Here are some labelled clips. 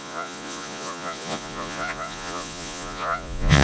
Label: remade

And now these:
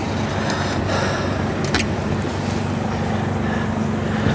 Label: recorded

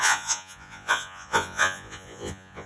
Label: remade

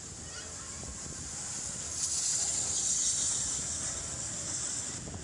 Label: recorded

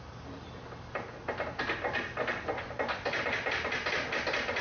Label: recorded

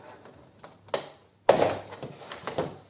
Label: recorded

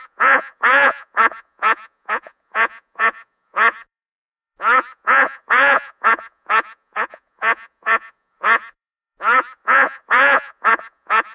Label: remade